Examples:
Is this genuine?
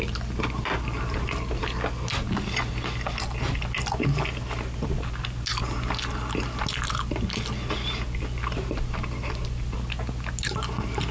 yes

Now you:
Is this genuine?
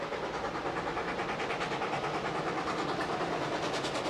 yes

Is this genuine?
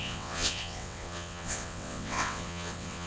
no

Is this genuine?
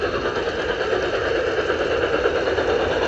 yes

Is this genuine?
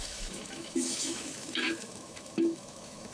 no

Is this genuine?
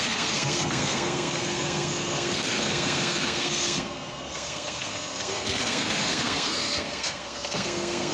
no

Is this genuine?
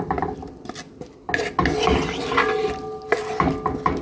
yes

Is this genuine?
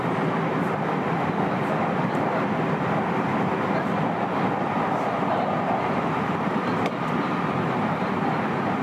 no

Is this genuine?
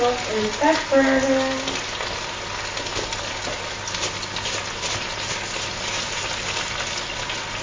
yes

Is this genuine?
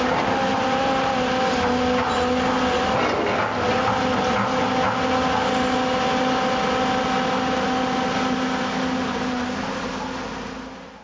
yes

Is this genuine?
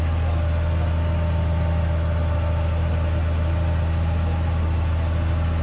yes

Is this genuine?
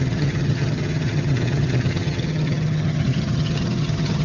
no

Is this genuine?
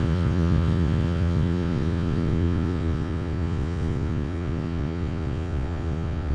no